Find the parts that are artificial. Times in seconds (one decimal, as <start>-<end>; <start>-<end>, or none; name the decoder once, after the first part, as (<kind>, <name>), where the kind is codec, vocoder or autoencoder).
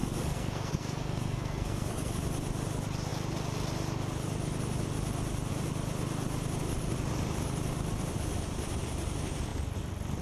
0.0-2.1 (codec, SNAC)